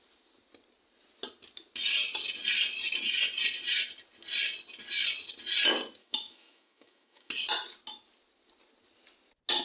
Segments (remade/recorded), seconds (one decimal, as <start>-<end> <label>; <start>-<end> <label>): 0.0-6.0 recorded; 6.0-7.3 remade; 7.3-9.6 recorded